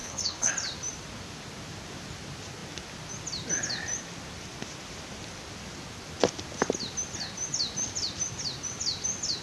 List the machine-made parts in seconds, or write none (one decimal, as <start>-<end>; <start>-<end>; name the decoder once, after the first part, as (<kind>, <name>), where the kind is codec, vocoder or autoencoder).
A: 0.0-0.5 (codec, HILCodec)